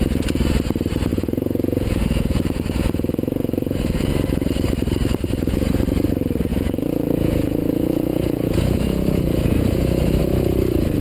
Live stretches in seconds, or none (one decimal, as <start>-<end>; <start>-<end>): 0.0-1.1; 4.1-6.5; 10.2-11.0